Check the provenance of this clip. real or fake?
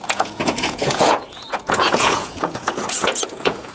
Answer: fake